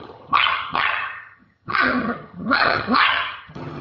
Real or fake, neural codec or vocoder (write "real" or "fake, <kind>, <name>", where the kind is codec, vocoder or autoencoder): fake, vocoder, HiFi-GAN